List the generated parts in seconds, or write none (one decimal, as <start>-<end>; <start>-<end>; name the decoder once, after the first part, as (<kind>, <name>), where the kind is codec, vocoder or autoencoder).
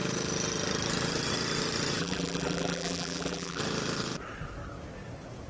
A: 2.0-3.6 (vocoder, BigVGAN v2)